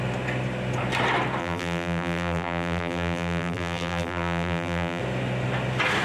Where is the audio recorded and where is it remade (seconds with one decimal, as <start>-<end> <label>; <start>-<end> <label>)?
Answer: 0.0-1.4 recorded; 1.4-5.0 remade; 5.0-6.0 recorded